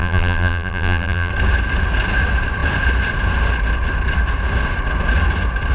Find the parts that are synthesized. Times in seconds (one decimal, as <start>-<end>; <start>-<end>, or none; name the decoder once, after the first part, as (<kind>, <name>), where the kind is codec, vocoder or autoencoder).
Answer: 0.0-1.3 (vocoder, BigVGAN v2)